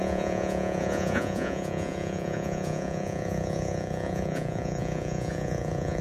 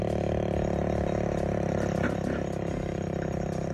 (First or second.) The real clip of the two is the second